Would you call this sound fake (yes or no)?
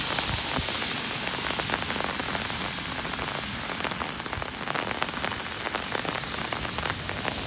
no